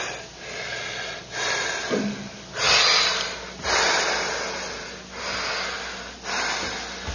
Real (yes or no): yes